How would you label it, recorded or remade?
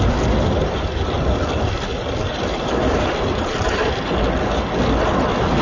recorded